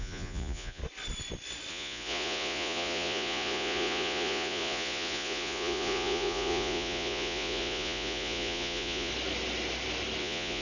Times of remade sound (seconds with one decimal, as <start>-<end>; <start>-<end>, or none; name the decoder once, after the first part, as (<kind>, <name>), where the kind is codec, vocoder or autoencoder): 0.0-0.8 (vocoder, Vocos); 1.7-9.1; 10.2-10.6